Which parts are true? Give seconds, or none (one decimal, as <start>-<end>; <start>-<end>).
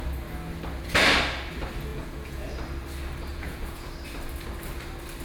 0.0-1.9; 2.5-3.3; 3.9-5.2